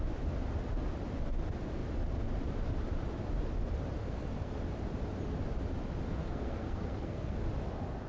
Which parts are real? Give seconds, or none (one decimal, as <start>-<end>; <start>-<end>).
0.0-4.0; 4.6-6.2; 7.4-8.1

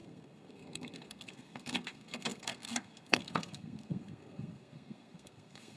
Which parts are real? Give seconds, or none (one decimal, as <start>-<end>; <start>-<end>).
none

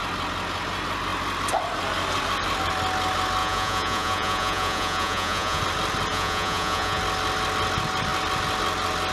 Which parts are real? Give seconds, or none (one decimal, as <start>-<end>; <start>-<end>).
0.0-3.4; 5.6-6.1; 7.0-9.1

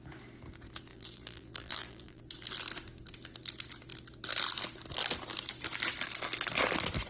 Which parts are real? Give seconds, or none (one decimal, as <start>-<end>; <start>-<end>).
0.0-0.9; 2.2-7.1